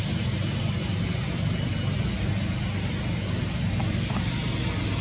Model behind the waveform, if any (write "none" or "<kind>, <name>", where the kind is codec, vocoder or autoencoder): none